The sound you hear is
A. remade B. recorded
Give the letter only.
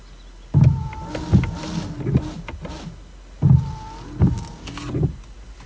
B